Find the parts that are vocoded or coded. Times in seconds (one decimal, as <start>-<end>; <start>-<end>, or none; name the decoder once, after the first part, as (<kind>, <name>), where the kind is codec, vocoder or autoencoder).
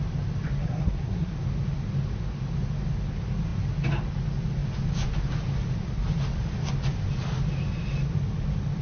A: 0.6-1.3 (codec, SNAC)